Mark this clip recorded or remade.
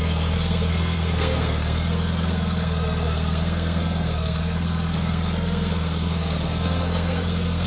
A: remade